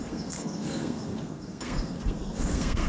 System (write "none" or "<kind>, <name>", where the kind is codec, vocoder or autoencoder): codec, SNAC